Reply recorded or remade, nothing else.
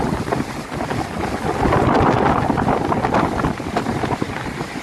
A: recorded